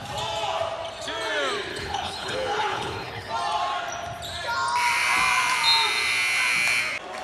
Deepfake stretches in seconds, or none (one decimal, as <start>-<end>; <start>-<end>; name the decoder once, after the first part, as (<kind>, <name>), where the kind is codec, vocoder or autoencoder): 1.7-3.3 (codec, HILCodec)